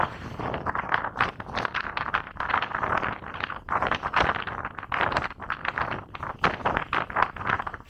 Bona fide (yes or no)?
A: yes